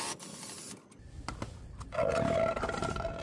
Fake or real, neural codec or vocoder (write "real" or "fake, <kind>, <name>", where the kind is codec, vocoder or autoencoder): real